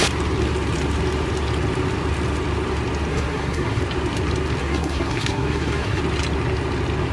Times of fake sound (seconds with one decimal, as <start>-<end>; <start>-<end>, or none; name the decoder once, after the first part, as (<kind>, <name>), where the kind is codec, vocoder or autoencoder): 3.1-3.8 (codec, SNAC); 4.6-6.0